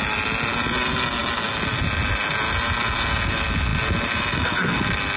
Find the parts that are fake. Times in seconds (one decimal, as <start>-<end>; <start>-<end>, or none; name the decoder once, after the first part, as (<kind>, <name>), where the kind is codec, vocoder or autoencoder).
none